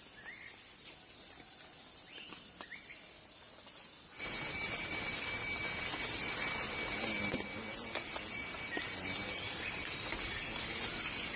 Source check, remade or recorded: recorded